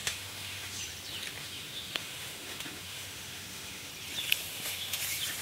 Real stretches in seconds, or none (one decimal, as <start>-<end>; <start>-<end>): 0.8-1.4; 3.9-4.5; 5.0-5.4